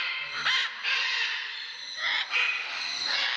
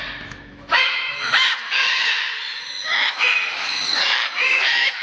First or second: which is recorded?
first